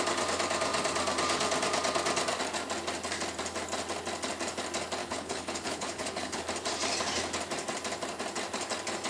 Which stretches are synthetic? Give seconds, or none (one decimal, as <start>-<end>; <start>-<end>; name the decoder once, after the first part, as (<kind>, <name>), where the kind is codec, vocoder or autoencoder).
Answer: 5.0-6.4 (codec, HILCodec)